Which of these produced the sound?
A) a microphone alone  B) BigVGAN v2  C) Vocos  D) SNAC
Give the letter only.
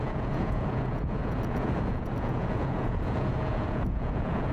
C